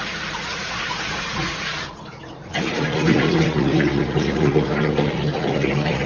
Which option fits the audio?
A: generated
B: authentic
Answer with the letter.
A